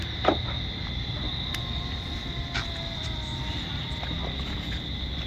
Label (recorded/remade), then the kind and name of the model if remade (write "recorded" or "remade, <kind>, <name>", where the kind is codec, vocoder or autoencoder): recorded